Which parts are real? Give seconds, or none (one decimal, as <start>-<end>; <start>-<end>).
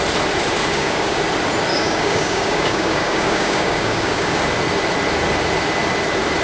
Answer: 0.0-0.7; 1.2-1.7; 4.4-6.4